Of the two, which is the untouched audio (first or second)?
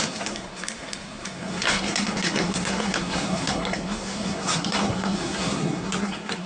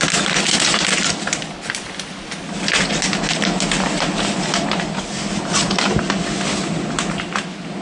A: second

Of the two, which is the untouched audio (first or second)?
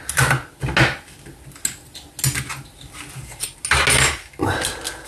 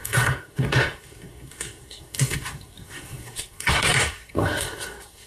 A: first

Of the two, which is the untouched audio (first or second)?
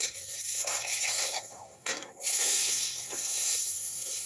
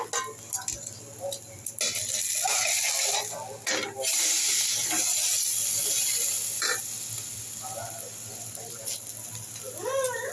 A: second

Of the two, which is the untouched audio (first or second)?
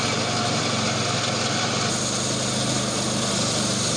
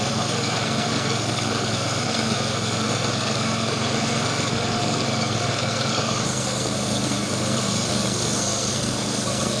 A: first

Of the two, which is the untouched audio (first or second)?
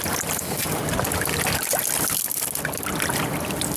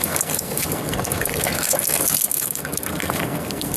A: first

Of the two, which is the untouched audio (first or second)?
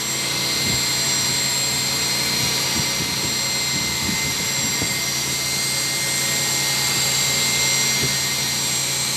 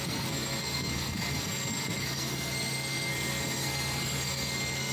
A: first